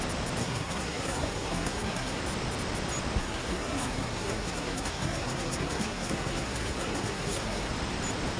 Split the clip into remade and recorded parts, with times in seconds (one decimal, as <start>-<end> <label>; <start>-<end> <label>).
0.0-0.4 recorded; 0.4-2.2 remade; 2.2-3.2 recorded; 3.2-7.7 remade; 7.7-8.4 recorded